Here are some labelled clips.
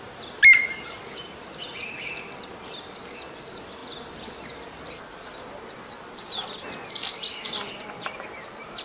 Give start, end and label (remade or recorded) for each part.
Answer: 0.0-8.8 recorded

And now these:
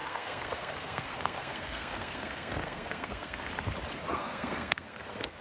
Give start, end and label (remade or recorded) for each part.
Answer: 0.0-3.5 remade; 3.5-4.1 recorded; 4.1-5.4 remade

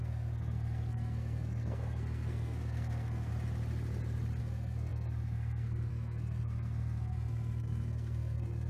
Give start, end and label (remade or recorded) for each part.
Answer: 0.0-3.3 remade; 3.3-4.4 recorded; 4.4-8.7 remade

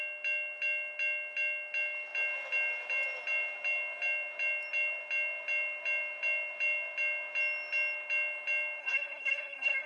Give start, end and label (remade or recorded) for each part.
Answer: 0.0-8.8 recorded; 8.8-9.9 remade

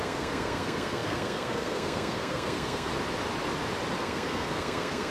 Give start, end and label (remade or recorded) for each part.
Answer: 0.0-2.9 remade; 2.9-4.0 recorded; 4.0-5.1 remade

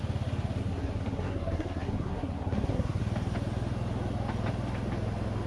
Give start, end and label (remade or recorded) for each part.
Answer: 0.0-0.6 recorded; 0.6-3.0 remade; 3.0-5.5 recorded